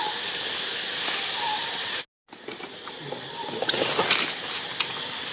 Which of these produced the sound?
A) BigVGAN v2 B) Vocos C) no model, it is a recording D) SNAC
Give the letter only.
C